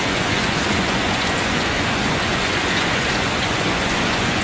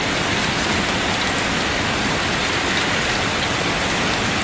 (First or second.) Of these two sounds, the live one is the second